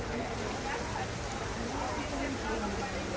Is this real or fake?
real